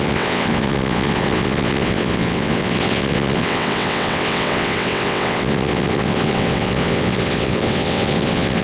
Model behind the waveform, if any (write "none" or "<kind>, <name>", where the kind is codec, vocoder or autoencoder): vocoder, WaveNeXt